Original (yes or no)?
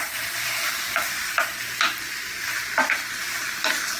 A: yes